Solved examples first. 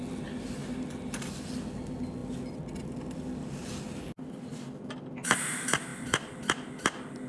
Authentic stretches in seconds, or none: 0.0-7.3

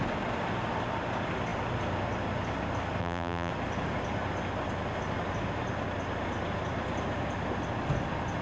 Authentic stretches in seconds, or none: 0.0-3.0; 3.5-8.4

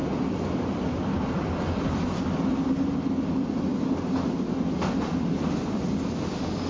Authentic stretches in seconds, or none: 3.7-5.3

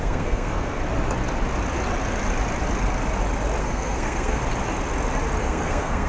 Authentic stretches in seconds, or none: 0.8-3.6; 4.4-5.4

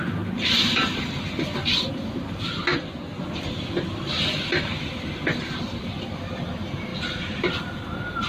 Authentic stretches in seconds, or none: 0.0-2.7; 3.2-6.9; 7.5-8.3

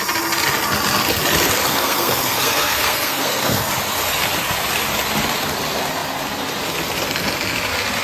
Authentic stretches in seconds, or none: 0.0-1.7; 3.7-8.0